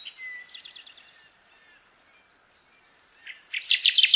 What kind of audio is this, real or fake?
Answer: real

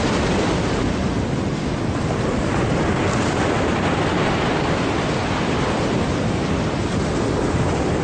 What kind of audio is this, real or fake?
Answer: real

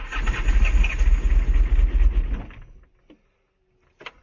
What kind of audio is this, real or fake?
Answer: real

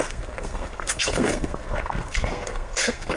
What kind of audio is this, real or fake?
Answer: fake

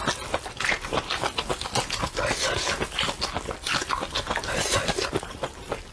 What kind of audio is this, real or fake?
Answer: real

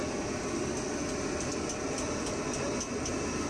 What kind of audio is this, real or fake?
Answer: real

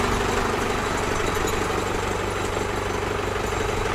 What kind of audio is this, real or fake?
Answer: real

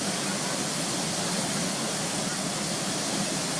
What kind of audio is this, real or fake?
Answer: real